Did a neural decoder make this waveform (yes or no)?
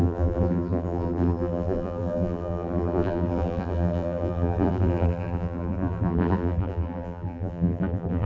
yes